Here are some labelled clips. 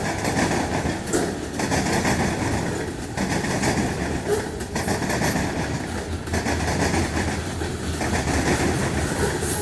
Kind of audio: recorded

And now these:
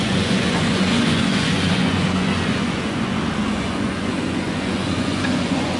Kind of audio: remade